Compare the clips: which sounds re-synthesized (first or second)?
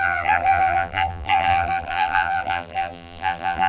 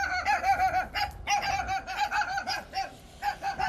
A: first